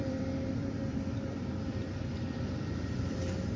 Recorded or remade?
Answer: remade